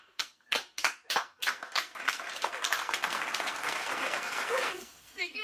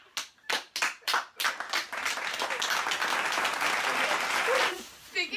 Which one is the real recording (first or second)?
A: second